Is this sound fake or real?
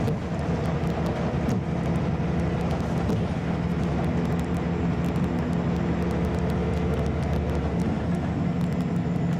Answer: real